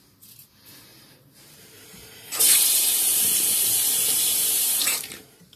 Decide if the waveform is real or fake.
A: fake